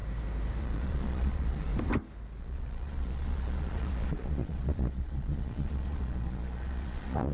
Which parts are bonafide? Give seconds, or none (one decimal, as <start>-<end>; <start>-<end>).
0.0-0.6; 1.7-2.4

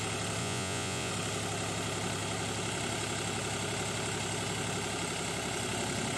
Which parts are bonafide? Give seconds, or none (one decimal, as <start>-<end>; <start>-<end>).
0.0-0.4; 1.1-6.2

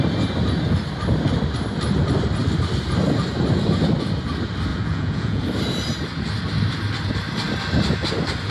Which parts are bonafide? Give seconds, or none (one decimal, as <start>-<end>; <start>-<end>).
0.0-4.7; 5.4-8.5

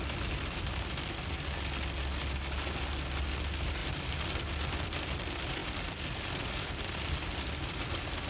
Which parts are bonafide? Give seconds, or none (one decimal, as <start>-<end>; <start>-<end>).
0.0-3.8; 4.3-8.3

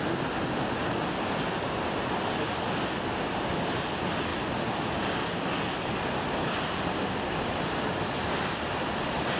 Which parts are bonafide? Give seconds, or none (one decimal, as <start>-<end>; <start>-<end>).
0.0-9.4

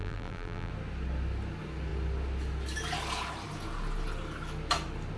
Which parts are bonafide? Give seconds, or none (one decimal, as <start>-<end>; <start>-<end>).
0.7-5.2